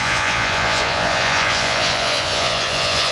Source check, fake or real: fake